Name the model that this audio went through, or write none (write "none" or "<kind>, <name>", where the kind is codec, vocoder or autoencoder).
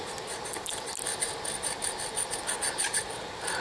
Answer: none